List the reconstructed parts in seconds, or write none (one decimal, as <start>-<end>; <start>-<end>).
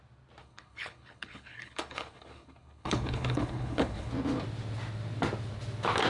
0.4-4.1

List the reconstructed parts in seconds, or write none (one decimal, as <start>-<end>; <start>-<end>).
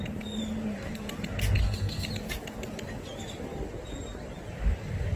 1.6-2.1